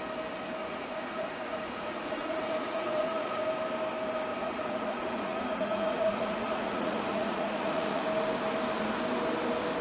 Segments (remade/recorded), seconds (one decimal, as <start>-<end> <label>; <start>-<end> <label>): 0.0-0.6 recorded; 0.6-3.4 remade; 3.4-4.3 recorded; 4.3-8.0 remade; 8.0-9.8 recorded